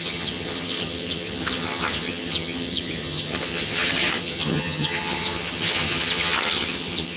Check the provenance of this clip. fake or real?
fake